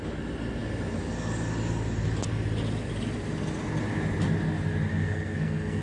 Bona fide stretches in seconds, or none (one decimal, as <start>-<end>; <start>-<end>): 0.0-4.9

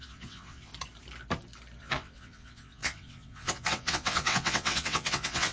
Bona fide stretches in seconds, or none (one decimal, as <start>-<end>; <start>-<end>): 0.7-1.8

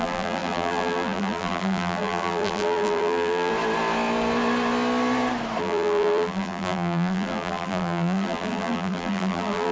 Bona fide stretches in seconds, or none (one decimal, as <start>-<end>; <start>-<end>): 3.5-5.6

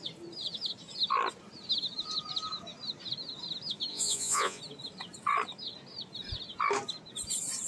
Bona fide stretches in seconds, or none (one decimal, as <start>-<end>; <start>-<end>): 0.0-3.9; 4.6-7.7

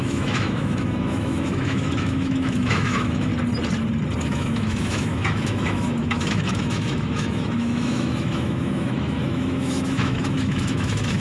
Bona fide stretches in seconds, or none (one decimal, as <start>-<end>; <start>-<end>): 3.3-4.2

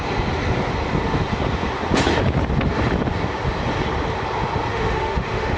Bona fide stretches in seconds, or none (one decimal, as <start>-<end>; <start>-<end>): 0.0-4.7